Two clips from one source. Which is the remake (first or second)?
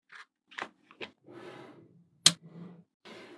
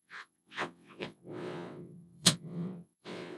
second